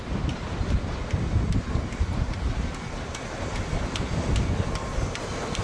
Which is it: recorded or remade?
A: recorded